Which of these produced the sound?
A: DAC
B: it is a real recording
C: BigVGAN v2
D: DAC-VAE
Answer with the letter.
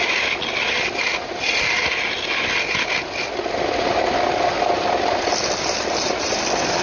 B